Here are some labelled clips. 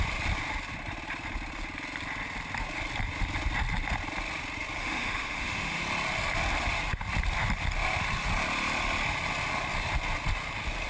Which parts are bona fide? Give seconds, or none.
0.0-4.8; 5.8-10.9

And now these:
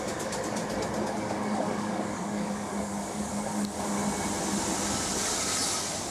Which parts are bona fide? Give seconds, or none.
0.6-1.1; 4.0-4.9; 5.5-6.1

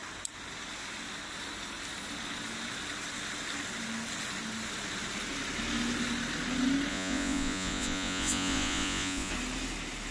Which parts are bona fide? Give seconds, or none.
0.0-6.9; 9.3-10.1

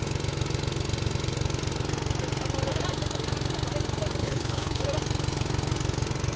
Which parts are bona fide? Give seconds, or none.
0.0-4.2; 4.8-6.4

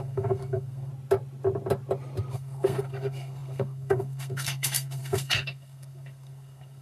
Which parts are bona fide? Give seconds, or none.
0.9-2.3